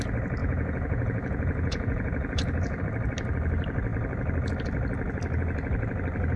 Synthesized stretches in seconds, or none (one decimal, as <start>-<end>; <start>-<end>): 0.4-2.8